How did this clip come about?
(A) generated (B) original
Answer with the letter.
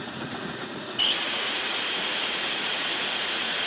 A